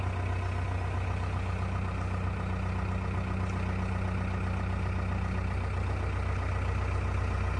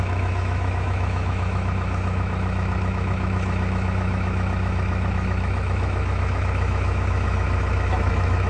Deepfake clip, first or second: second